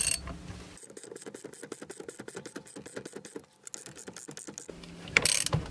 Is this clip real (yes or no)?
yes